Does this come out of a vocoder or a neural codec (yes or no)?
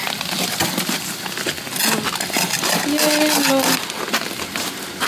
no